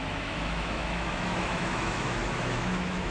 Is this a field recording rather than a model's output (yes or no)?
no